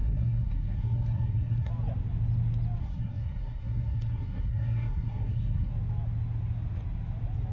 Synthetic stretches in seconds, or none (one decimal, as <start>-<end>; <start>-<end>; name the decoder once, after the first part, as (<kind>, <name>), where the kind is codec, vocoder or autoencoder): 0.0-1.7 (codec, SNAC); 2.8-5.7